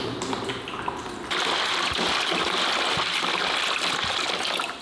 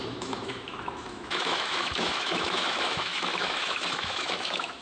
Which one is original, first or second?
first